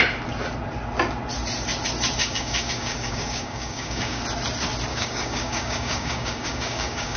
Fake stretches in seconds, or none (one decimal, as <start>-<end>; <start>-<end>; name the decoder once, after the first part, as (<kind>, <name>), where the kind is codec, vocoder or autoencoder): 2.2-4.2 (codec, DAC); 4.9-7.2